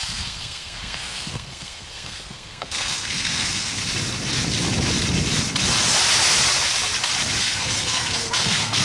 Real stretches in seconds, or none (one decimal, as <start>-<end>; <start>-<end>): 3.8-7.4